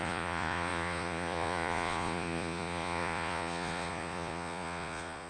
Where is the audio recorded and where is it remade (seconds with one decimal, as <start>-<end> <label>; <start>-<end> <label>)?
0.0-5.3 remade